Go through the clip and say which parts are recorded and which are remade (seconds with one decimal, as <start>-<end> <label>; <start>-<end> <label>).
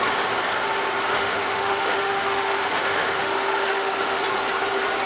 0.0-1.1 recorded; 1.1-4.2 remade; 4.2-5.1 recorded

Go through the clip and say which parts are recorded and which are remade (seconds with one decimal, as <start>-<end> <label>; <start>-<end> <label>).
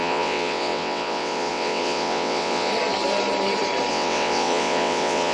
0.0-2.7 remade; 2.7-3.9 recorded; 3.9-5.3 remade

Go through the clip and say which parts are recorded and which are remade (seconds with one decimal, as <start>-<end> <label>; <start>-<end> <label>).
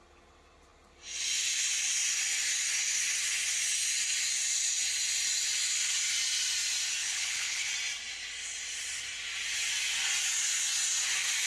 0.0-7.0 recorded; 7.0-7.7 remade; 7.7-11.5 recorded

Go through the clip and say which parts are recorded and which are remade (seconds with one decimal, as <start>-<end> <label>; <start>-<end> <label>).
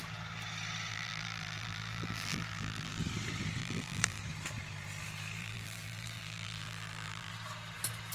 0.0-0.9 recorded; 0.9-3.0 remade; 3.0-3.6 recorded; 3.6-4.2 remade; 4.2-5.4 recorded; 5.4-7.3 remade; 7.3-8.1 recorded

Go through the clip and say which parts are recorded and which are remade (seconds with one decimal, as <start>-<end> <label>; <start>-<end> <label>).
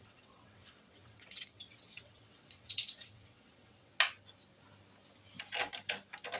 0.0-3.9 remade; 3.9-6.4 recorded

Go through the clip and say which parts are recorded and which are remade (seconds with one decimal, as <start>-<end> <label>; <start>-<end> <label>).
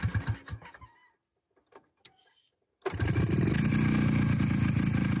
0.0-5.2 recorded